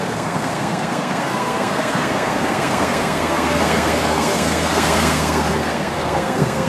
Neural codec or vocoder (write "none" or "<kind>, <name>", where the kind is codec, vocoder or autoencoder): codec, SNAC